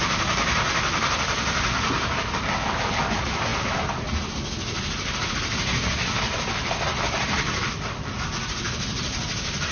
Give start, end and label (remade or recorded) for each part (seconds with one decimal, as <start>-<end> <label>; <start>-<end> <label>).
0.0-9.7 recorded